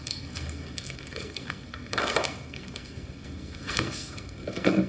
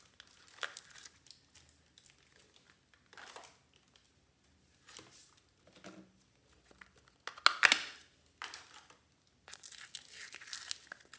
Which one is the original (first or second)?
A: second